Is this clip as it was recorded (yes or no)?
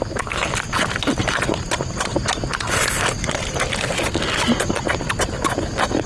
yes